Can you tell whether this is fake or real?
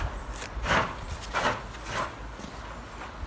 real